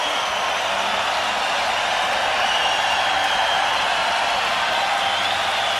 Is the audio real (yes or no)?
yes